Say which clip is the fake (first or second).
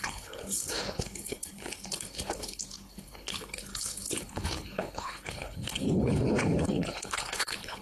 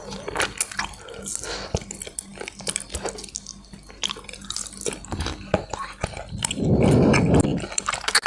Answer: first